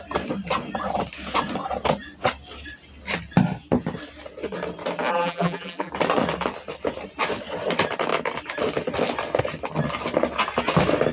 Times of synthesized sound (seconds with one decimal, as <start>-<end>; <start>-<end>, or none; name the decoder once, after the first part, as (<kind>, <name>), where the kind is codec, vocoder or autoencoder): 5.1-5.9 (vocoder, BigVGAN v2)